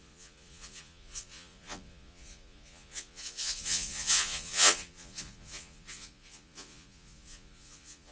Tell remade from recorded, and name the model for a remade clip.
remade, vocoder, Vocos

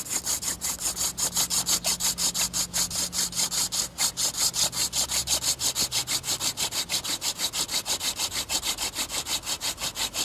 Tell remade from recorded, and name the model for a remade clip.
recorded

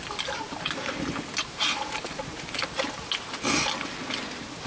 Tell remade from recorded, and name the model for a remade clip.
recorded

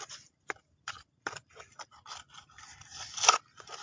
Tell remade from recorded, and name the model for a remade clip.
recorded